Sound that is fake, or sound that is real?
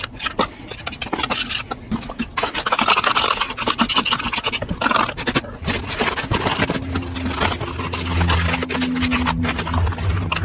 real